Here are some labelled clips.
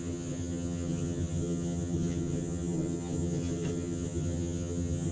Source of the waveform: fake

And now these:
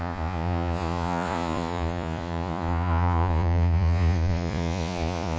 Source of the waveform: fake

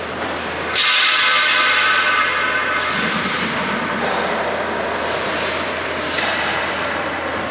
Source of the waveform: fake